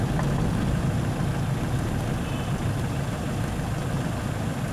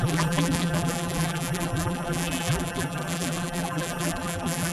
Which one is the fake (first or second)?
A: second